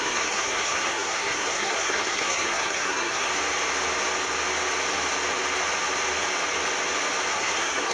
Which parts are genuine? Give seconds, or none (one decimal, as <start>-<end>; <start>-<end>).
3.3-7.3

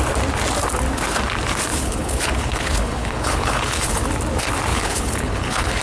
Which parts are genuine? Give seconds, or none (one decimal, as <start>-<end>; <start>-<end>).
0.0-1.7; 4.0-4.7

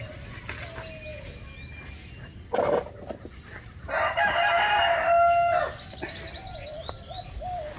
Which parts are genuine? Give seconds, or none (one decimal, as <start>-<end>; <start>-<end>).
0.0-7.8

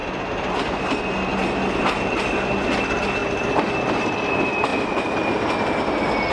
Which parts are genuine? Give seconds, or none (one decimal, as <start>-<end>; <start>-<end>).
0.0-6.3

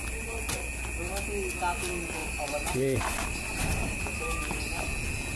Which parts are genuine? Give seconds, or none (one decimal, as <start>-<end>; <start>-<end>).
0.0-2.2; 4.9-5.4

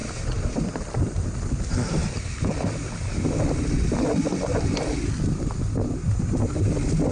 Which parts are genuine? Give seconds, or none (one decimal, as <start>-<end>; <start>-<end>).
1.4-7.1